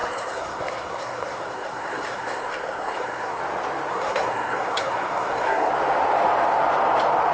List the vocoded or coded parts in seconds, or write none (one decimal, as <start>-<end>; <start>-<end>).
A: 0.0-3.4; 3.9-5.7